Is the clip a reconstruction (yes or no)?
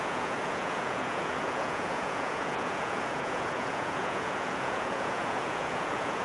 yes